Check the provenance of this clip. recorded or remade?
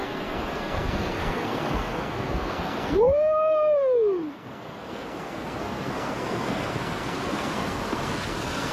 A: remade